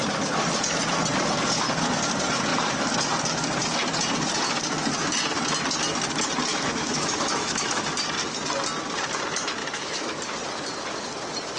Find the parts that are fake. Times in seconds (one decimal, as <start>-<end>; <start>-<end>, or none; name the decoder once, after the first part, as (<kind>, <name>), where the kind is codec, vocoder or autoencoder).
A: 6.5-7.8 (autoencoder, DAC-VAE); 9.6-10.2